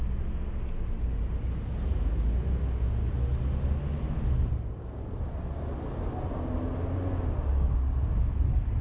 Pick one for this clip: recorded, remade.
recorded